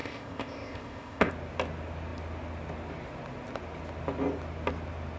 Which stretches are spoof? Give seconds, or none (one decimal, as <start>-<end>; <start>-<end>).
0.0-1.3